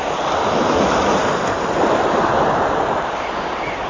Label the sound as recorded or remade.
recorded